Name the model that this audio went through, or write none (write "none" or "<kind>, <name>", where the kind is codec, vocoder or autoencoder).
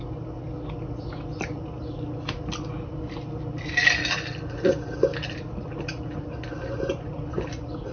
none